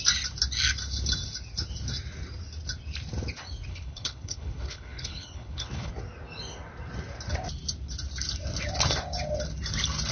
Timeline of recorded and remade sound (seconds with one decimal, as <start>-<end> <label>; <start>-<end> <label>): 0.0-3.7 recorded; 3.7-5.9 remade; 5.9-10.1 recorded